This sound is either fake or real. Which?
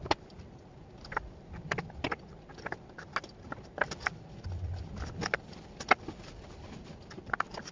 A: real